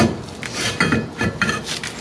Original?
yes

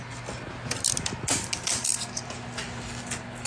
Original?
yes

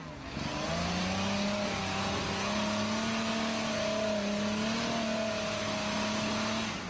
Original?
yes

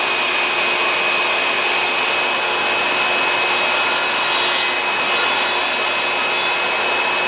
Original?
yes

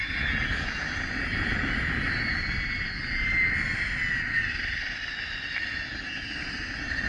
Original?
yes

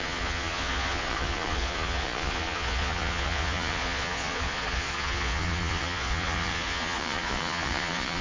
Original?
no